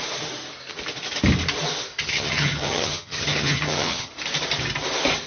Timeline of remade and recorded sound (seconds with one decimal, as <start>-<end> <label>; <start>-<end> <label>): 0.0-2.0 recorded; 2.0-4.1 remade; 4.1-5.3 recorded